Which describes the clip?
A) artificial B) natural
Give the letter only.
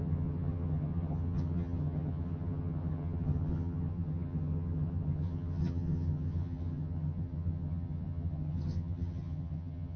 A